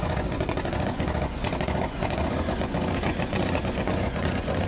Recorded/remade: remade